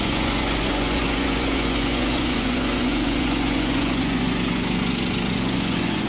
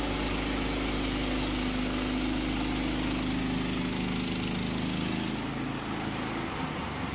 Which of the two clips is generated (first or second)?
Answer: first